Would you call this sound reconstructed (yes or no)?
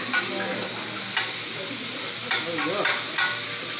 no